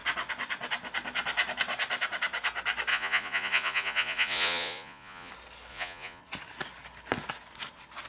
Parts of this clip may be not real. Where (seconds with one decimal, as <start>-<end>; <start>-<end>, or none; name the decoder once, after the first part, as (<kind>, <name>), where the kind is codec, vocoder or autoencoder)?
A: 2.9-5.3 (vocoder, Vocos); 5.7-6.2